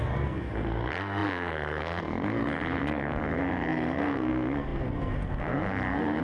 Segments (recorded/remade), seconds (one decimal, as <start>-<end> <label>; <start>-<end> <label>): 0.0-6.2 remade